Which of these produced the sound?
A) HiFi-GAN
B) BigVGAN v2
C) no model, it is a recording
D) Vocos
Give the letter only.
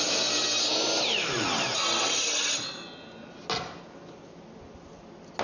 C